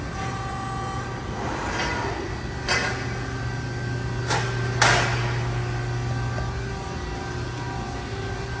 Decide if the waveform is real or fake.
real